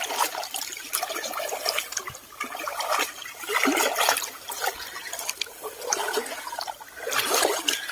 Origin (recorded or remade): recorded